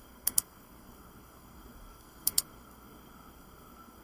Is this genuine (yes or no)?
no